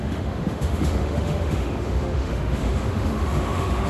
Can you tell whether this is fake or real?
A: fake